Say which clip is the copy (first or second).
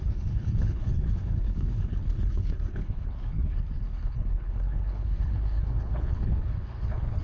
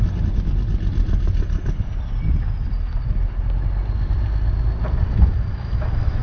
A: first